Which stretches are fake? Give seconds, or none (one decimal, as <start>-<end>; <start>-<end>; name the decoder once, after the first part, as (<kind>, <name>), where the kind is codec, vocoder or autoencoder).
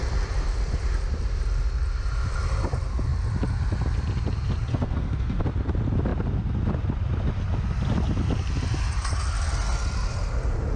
4.7-5.4 (codec, SNAC)